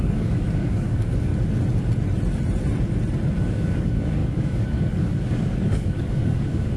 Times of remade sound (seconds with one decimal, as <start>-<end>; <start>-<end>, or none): 0.0-1.3; 3.4-6.8

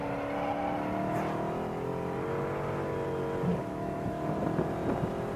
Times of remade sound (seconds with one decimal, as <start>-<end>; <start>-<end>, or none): 3.5-4.4

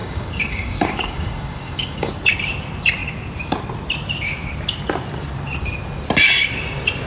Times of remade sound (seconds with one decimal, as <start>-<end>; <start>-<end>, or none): 0.0-2.1

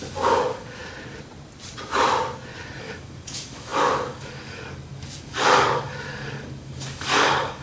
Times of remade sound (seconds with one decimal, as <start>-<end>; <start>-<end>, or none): 0.0-0.8; 2.8-7.6

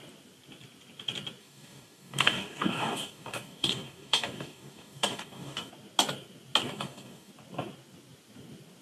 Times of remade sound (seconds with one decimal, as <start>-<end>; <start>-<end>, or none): 1.4-5.7; 6.6-7.3

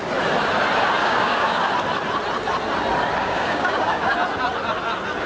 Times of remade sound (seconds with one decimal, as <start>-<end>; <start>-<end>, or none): 1.0-1.7; 3.2-4.1